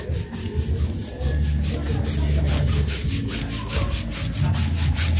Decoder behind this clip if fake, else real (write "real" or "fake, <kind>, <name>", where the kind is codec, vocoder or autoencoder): real